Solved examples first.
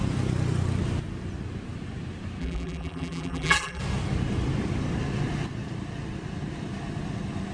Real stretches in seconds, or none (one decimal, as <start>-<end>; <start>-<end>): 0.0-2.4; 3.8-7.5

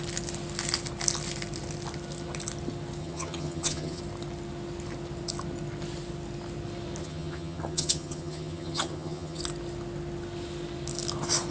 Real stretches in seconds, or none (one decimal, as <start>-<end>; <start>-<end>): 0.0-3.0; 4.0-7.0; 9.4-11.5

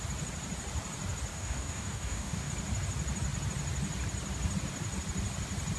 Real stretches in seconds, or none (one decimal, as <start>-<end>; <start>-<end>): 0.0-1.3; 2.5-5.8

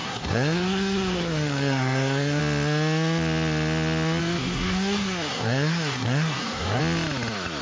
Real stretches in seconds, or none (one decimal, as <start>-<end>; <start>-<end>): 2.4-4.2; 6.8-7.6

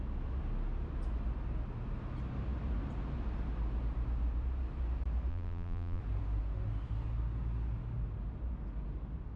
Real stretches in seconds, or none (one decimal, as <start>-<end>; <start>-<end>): 0.0-5.3; 6.0-9.4

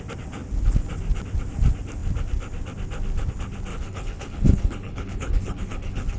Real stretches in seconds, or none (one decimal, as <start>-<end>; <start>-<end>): 0.0-3.7